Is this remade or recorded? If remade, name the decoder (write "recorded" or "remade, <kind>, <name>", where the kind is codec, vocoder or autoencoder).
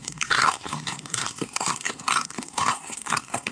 remade, codec, SNAC